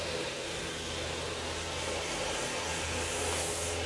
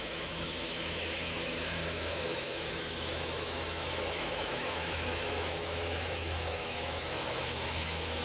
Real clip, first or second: first